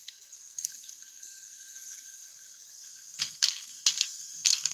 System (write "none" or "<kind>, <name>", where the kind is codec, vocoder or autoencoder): codec, SNAC